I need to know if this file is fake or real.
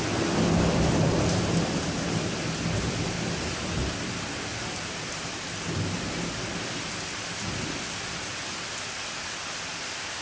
real